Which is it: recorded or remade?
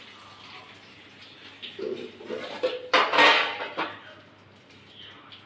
recorded